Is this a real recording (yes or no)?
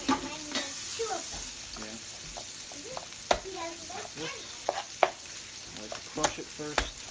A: yes